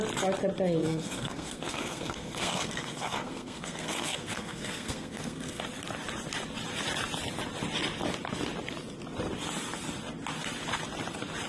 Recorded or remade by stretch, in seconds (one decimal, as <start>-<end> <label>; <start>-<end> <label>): 0.0-0.8 recorded; 0.8-5.6 remade; 5.6-11.5 recorded